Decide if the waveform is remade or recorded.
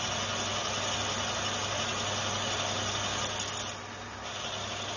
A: recorded